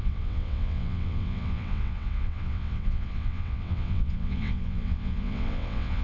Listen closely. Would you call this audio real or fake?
fake